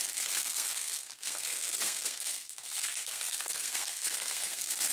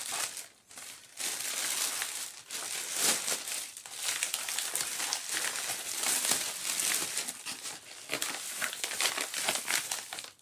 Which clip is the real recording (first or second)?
second